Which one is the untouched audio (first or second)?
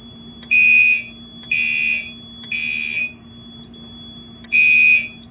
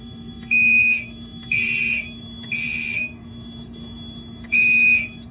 first